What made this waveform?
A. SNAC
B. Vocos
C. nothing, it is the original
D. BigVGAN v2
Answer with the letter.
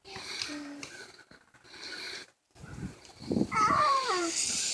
D